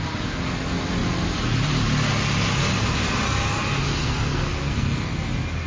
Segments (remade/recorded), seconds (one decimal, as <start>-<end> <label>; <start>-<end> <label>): 0.0-4.0 recorded; 4.0-5.1 remade; 5.1-5.7 recorded